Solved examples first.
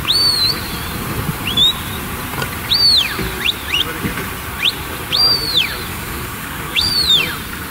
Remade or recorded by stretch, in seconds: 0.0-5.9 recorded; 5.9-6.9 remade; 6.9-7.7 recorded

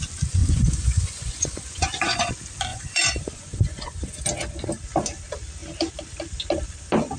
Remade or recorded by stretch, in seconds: 0.0-0.4 recorded; 0.4-2.3 remade; 2.3-2.7 recorded; 2.7-4.2 remade; 4.2-7.2 recorded

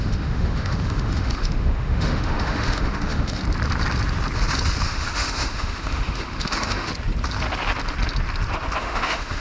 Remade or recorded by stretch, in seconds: 0.0-3.4 remade; 3.4-4.8 recorded; 4.8-6.9 remade; 6.9-8.8 recorded; 8.8-9.4 remade

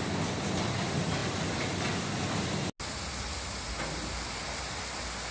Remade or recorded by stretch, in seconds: 0.0-5.3 recorded

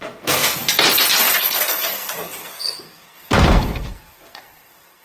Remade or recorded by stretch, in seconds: 0.0-0.6 remade; 0.6-1.4 recorded; 1.4-5.0 remade